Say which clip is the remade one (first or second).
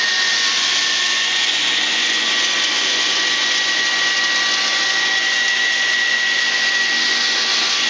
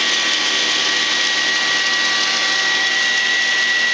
first